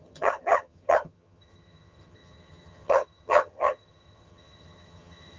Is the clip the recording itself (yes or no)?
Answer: no